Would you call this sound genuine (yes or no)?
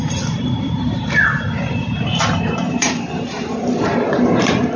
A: no